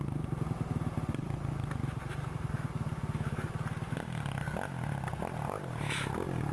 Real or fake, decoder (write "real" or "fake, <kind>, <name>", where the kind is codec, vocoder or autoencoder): real